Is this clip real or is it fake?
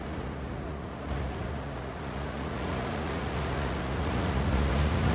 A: fake